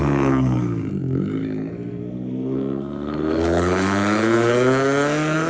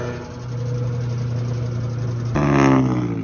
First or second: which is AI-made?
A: first